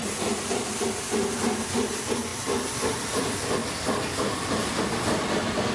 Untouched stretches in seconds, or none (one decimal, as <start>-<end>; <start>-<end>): 0.0-1.0; 3.6-4.6